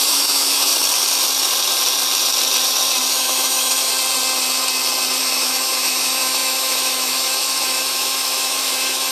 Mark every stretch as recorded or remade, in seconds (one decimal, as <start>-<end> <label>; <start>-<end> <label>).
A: 0.0-0.7 remade; 0.7-3.1 recorded; 3.1-3.9 remade; 3.9-5.2 recorded; 5.2-9.1 remade